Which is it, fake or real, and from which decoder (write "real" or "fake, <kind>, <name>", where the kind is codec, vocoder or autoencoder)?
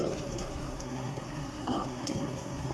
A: fake, codec, SNAC